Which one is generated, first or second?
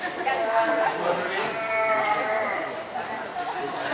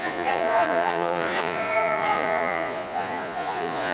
second